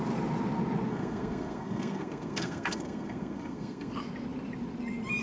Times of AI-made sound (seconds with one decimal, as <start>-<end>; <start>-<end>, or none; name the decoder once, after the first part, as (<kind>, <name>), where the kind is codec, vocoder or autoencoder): 0.9-3.9 (codec, SNAC)

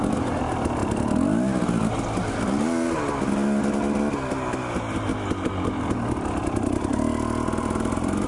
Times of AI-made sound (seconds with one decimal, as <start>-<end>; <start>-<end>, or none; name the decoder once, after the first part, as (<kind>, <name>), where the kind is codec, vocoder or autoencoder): none

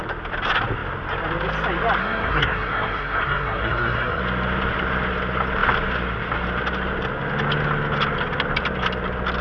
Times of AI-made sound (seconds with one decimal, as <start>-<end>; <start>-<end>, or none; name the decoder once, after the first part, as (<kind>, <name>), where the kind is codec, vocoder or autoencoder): 2.0-4.2 (codec, SNAC)

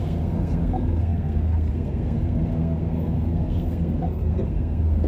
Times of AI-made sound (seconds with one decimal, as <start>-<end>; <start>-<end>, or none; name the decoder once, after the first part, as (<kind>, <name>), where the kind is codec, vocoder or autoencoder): 0.0-5.1 (codec, SNAC)

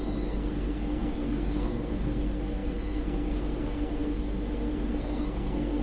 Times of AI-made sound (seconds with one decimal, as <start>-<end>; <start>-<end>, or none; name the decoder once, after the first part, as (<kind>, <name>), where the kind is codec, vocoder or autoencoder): 0.0-5.8 (codec, SNAC)

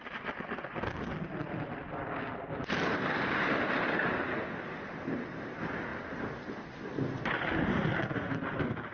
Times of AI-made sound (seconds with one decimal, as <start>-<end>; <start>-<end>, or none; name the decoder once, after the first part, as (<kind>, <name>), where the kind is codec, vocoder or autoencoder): none